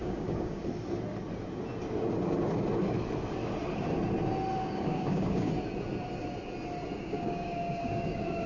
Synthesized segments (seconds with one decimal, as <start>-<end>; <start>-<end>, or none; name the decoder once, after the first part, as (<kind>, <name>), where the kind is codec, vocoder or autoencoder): 0.0-0.6 (codec, DAC); 4.6-5.5; 7.0-8.5